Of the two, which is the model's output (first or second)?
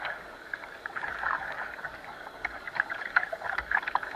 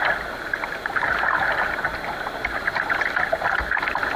first